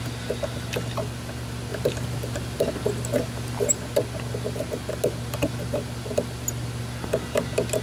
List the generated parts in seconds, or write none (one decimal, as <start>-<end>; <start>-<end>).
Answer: none